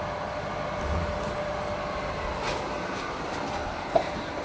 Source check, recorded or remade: recorded